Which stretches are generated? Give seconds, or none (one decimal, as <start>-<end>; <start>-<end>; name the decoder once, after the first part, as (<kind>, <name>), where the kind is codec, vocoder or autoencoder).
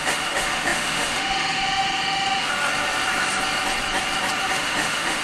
0.0-2.5 (autoencoder, DAC-VAE); 4.4-5.2